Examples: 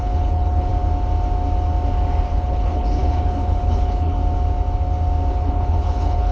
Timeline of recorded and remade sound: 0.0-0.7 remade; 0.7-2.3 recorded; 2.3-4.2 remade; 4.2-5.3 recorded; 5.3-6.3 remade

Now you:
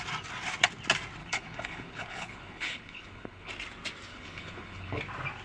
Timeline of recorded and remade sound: 0.0-1.2 recorded; 1.2-3.5 remade; 3.5-4.1 recorded; 4.1-5.0 remade; 5.0-5.4 recorded

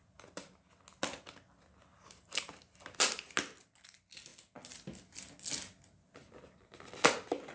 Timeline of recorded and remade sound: 0.0-7.5 recorded